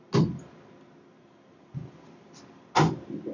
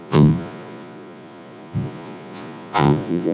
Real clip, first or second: first